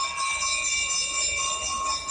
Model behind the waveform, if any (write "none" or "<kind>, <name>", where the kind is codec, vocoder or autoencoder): none